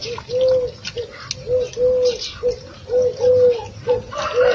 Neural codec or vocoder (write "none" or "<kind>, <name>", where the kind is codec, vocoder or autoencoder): none